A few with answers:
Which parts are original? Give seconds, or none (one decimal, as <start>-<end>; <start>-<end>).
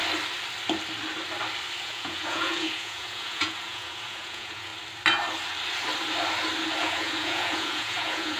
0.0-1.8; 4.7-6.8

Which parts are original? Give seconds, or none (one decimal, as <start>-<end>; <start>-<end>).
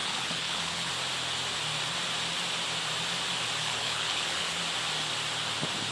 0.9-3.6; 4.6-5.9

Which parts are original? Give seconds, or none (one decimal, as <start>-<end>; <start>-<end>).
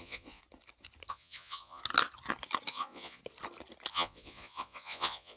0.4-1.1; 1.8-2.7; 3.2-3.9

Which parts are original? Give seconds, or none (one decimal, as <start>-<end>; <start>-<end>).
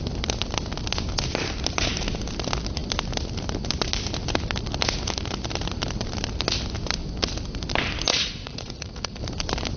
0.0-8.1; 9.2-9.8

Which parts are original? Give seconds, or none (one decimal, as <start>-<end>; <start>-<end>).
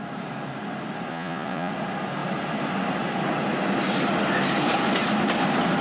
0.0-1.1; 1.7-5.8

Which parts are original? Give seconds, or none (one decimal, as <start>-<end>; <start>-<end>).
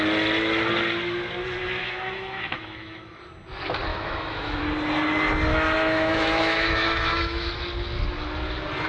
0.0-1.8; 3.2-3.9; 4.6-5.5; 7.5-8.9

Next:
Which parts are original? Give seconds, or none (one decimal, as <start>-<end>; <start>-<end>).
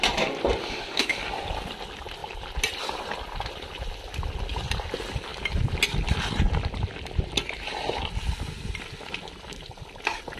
0.0-0.6; 1.2-10.4